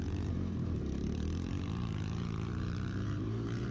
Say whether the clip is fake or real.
fake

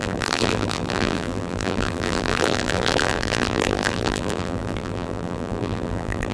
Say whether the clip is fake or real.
fake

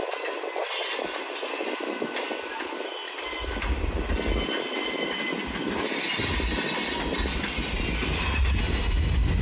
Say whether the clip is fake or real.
real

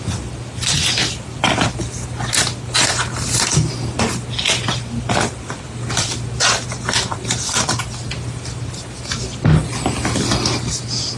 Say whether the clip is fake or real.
real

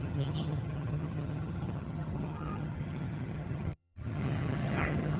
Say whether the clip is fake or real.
fake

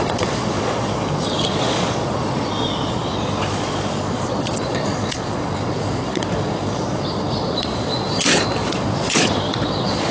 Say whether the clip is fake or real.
fake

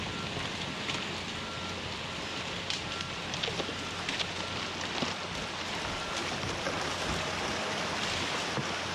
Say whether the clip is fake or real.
real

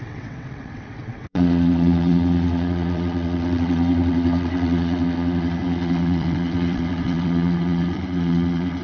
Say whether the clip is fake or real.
fake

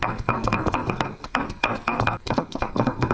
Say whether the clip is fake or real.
fake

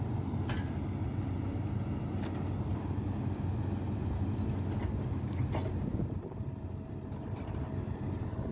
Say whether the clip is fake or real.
real